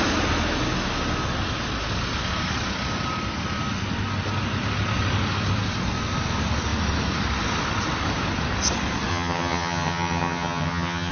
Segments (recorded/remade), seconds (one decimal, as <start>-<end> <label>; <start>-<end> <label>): 0.0-9.1 recorded; 9.1-11.1 remade